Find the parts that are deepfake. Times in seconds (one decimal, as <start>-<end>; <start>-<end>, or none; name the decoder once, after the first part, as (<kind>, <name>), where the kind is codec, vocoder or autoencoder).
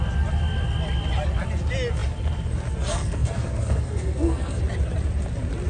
2.9-4.6 (codec, SNAC)